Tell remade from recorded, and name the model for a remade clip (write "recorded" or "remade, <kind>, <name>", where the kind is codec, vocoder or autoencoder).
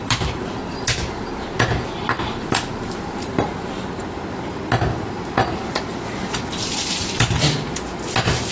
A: recorded